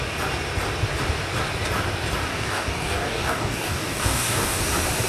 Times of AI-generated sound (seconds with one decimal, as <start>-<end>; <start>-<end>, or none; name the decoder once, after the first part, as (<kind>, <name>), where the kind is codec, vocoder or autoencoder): 2.3-4.6 (codec, DAC)